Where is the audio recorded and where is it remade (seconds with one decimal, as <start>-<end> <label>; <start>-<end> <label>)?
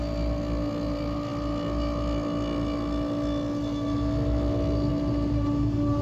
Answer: 0.0-6.0 recorded